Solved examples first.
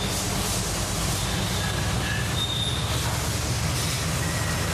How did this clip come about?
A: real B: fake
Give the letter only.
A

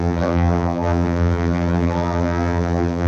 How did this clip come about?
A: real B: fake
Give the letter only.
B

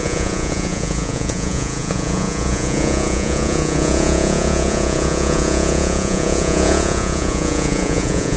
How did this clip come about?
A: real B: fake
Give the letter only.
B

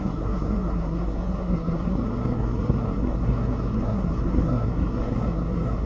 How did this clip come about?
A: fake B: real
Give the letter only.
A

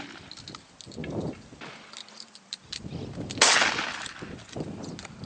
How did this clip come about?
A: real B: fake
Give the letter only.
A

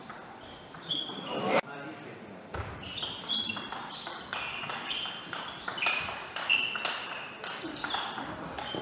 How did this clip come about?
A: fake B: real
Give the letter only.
A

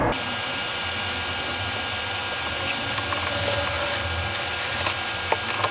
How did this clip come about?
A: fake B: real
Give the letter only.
B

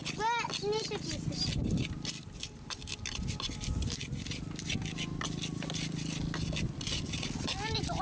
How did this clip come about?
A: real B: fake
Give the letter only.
A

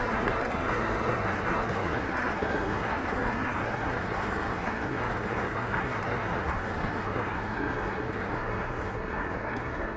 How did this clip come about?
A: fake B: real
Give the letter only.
A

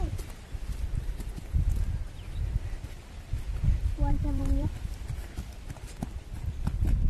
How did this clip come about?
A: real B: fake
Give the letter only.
B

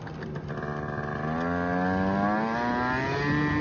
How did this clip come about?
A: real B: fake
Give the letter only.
A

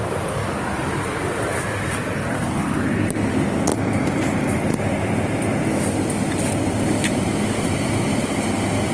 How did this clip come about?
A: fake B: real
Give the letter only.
B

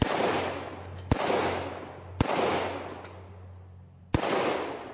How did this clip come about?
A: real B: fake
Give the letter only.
A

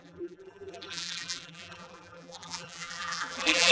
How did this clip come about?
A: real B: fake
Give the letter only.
B